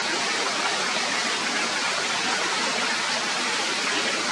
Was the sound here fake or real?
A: real